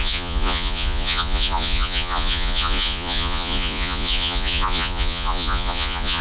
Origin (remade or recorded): remade